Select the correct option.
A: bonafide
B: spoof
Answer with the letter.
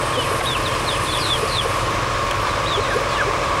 B